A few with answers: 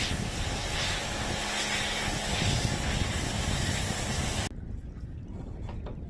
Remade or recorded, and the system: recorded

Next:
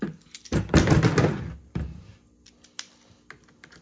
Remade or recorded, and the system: recorded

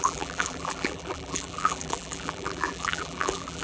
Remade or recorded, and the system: remade, vocoder, BigVGAN v2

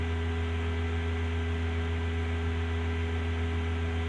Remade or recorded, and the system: recorded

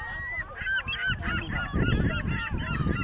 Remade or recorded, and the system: recorded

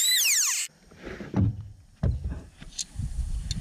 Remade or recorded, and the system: recorded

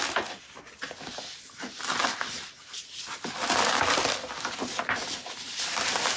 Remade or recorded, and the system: recorded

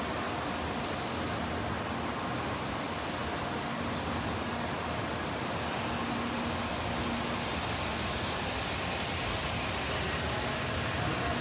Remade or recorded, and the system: recorded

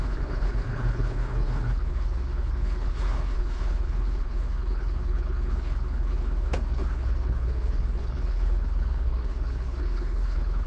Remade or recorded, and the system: remade, codec, HILCodec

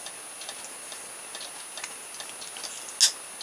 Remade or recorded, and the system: recorded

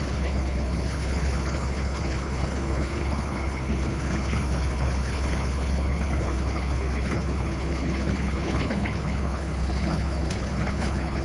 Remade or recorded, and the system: remade, codec, HILCodec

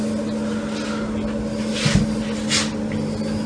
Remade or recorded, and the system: recorded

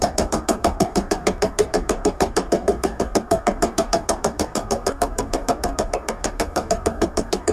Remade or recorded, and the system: remade, codec, DAC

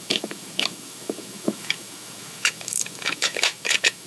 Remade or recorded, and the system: remade, autoencoder, DAC-VAE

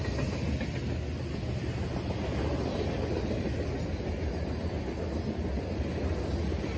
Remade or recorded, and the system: recorded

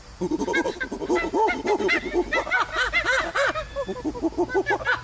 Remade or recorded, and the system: recorded